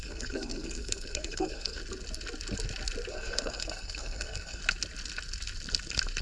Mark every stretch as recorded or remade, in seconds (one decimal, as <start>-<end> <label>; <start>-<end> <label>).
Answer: 0.0-1.8 remade; 1.8-3.1 recorded; 3.1-4.6 remade; 4.6-6.2 recorded